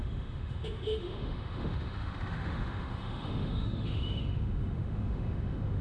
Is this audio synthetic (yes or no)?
yes